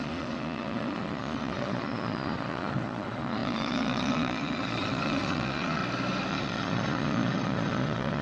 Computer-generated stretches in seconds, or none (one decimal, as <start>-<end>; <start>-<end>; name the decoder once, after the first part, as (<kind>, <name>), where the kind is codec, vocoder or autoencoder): 0.0-5.8 (vocoder, Vocos); 6.3-8.2